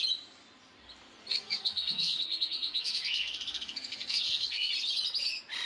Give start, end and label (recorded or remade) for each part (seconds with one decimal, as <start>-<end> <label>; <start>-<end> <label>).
0.0-1.3 recorded; 1.3-4.7 remade; 4.7-5.7 recorded